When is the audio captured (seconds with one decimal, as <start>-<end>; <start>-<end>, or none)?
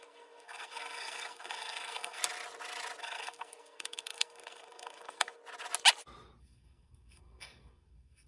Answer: 2.2-3.0; 5.4-6.4